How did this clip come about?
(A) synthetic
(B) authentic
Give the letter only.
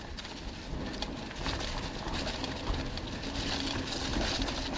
B